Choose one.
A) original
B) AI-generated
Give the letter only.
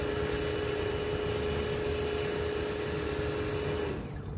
A